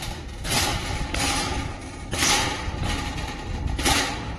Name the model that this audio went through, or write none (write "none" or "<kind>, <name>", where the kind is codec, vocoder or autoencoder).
vocoder, BigVGAN v2